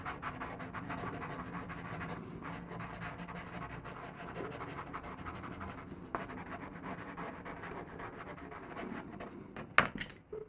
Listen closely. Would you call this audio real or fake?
real